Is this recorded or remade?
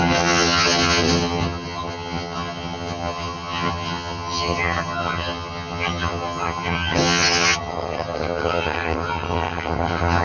remade